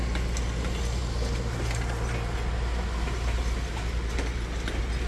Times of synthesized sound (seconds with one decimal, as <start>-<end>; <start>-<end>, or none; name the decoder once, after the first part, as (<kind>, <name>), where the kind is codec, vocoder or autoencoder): none